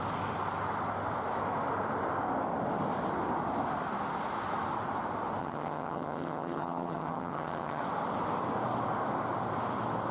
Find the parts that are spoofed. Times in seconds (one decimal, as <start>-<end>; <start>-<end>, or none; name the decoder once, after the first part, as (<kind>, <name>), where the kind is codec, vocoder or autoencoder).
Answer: 5.4-7.8 (vocoder, HiFi-GAN)